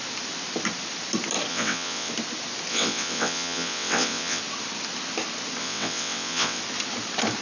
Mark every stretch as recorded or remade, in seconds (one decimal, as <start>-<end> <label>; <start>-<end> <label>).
0.0-1.5 recorded; 1.5-2.1 remade; 2.1-2.7 recorded; 2.7-4.4 remade; 4.4-5.6 recorded; 5.6-6.6 remade; 6.6-7.4 recorded